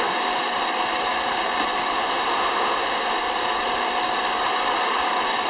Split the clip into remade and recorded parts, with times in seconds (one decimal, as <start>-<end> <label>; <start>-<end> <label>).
0.0-1.9 recorded; 1.9-3.0 remade; 3.0-5.5 recorded

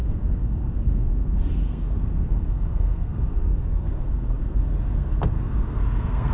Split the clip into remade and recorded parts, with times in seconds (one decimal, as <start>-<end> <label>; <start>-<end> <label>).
0.0-6.3 remade

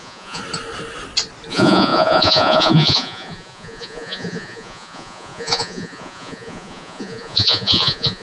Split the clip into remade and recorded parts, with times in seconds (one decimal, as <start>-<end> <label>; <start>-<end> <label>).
0.0-0.4 remade; 0.4-1.5 recorded; 1.5-8.2 remade

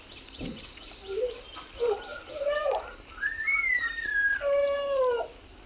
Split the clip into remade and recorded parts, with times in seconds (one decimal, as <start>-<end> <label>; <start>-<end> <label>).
0.0-5.7 recorded

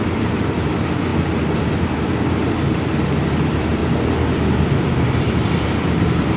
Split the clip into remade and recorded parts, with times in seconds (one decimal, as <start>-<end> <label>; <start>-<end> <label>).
0.0-1.1 remade; 1.1-1.9 recorded; 1.9-3.8 remade; 3.8-5.1 recorded; 5.1-6.4 remade